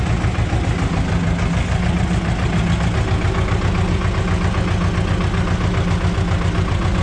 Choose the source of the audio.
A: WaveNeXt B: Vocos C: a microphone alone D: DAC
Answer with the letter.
C